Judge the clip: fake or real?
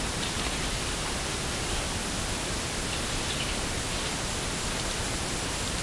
real